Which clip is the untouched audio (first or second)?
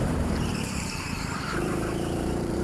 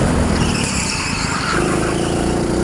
second